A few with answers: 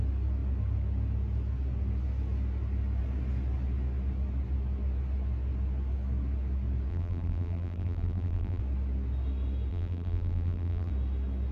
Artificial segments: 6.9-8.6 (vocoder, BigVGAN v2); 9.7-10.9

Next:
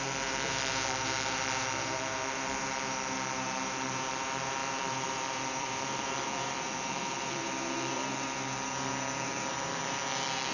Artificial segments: 4.6-8.9 (vocoder, BigVGAN v2); 9.3-10.0

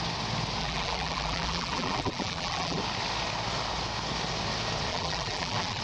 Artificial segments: 0.6-2.8 (vocoder, BigVGAN v2); 4.9-5.8

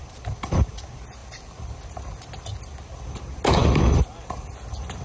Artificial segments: 1.2-1.9 (vocoder, BigVGAN v2); 3.6-4.6

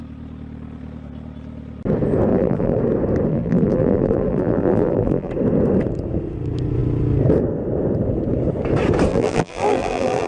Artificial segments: 2.3-2.8 (vocoder, BigVGAN v2); 3.3-5.3; 9.1-10.3

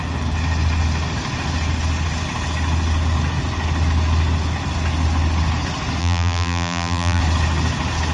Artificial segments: 6.0-7.2 (vocoder, BigVGAN v2)

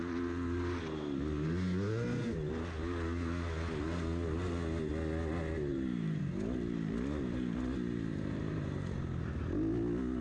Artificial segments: 5.7-6.2 (vocoder, BigVGAN v2); 8.1-9.4